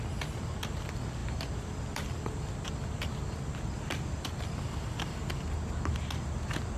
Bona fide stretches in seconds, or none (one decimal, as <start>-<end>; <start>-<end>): 0.0-1.2; 5.3-6.8

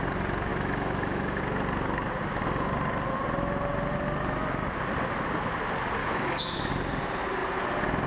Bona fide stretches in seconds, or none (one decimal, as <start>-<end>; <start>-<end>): 0.0-0.5; 1.4-6.0; 6.7-8.1

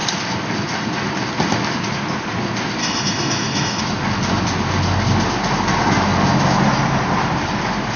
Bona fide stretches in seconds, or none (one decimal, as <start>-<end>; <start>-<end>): 0.0-2.8; 3.8-8.0